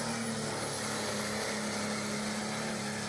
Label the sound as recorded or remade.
recorded